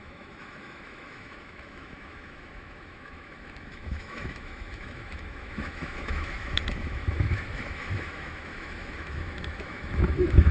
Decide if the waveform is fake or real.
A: fake